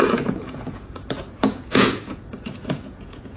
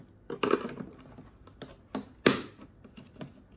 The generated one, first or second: first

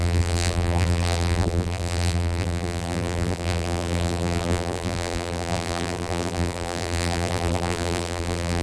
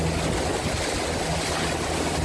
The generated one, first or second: first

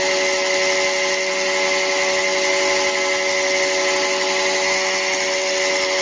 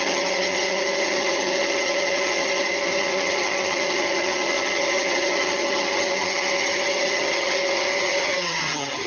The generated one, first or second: second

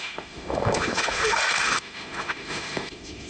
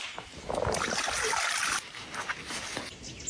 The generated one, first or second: first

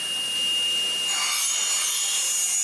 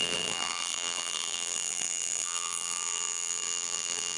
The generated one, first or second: second